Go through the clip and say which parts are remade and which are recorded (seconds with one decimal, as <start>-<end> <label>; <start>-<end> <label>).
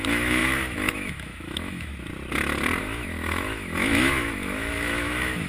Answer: 0.0-1.9 remade; 1.9-2.8 recorded; 2.8-5.5 remade